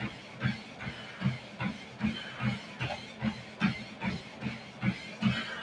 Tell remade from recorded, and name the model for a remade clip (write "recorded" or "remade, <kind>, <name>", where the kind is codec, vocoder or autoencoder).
recorded